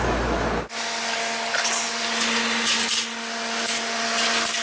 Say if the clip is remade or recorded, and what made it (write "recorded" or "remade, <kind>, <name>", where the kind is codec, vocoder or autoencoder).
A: recorded